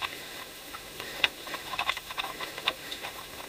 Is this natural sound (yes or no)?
no